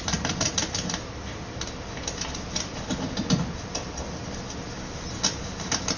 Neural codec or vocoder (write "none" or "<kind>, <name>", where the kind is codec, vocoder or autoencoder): none